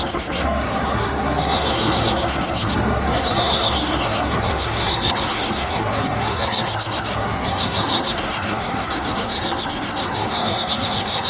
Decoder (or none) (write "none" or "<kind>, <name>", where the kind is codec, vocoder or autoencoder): codec, SNAC